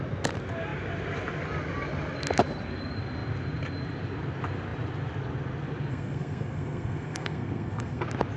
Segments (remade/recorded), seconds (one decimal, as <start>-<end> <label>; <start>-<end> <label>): 0.0-5.9 recorded; 5.9-8.0 remade; 8.0-8.4 recorded